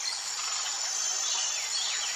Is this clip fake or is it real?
real